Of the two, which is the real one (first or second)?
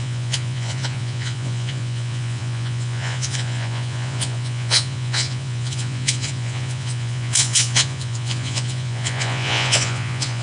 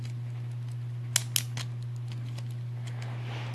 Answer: second